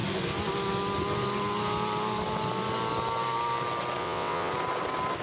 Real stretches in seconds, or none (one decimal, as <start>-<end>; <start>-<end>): 0.0-4.0; 4.5-5.2